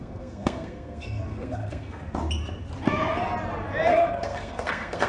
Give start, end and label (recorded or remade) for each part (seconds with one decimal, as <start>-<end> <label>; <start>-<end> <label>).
0.0-2.0 remade; 2.0-3.9 recorded; 3.9-5.1 remade